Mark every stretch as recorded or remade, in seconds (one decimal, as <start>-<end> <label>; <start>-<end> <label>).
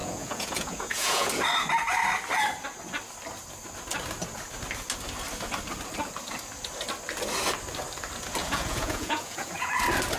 0.0-1.3 remade; 1.3-8.4 recorded; 8.4-9.7 remade; 9.7-10.2 recorded